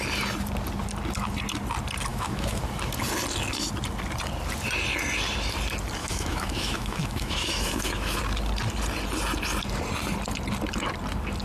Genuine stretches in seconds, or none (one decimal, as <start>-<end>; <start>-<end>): 0.0-2.1; 2.6-6.0; 8.2-11.4